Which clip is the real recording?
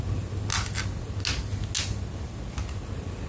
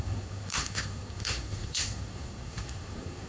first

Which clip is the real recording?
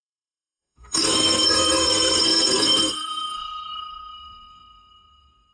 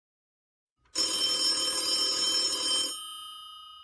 second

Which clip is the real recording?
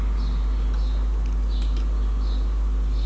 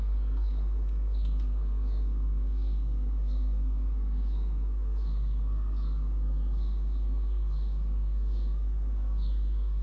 first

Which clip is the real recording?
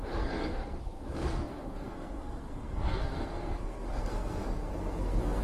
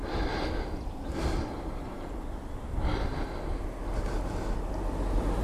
second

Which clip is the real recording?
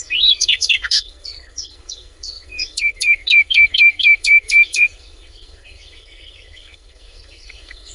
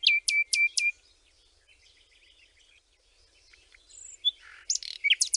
second